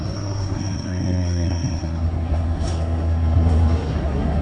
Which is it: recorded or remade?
remade